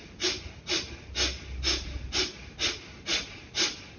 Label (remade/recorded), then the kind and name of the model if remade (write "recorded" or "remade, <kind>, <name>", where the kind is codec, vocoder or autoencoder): recorded